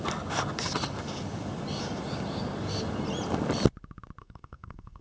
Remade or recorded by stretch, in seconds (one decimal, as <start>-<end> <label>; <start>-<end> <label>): 0.0-4.2 recorded; 4.2-5.0 remade